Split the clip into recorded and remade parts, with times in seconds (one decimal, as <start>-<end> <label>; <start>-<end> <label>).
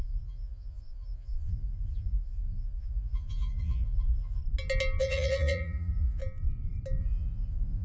0.0-4.4 remade; 4.4-5.0 recorded; 5.0-6.2 remade; 6.2-7.0 recorded; 7.0-7.8 remade